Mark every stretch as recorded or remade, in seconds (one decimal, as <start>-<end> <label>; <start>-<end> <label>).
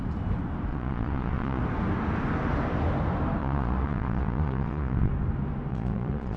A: 0.0-0.7 recorded; 0.7-1.6 remade; 1.6-3.4 recorded; 3.4-5.1 remade; 5.1-5.7 recorded; 5.7-6.4 remade